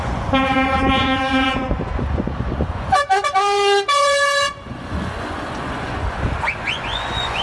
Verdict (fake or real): fake